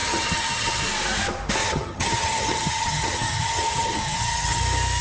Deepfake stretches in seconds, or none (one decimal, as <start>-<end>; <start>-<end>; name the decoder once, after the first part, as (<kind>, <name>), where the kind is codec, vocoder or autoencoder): 0.0-0.8 (vocoder, HiFi-GAN); 1.6-4.6